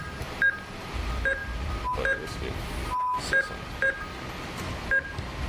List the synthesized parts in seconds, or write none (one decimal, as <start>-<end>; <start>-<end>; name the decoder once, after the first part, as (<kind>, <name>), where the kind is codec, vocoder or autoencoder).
none